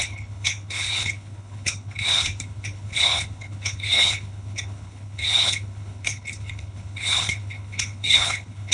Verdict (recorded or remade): remade